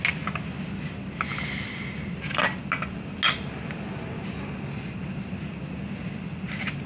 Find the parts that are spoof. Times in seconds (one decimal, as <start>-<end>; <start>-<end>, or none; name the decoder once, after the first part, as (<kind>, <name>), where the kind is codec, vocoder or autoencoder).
none